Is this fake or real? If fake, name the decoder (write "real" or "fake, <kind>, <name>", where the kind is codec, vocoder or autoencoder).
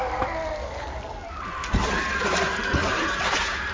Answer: real